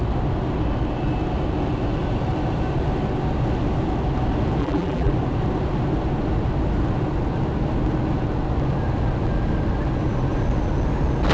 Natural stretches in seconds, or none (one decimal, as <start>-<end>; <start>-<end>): 0.0-4.6; 5.1-11.3